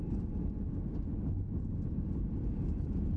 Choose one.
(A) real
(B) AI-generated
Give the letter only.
A